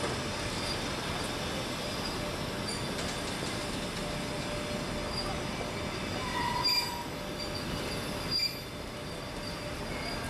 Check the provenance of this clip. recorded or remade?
recorded